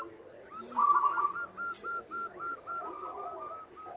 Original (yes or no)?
yes